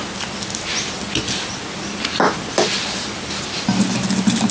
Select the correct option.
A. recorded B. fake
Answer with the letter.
A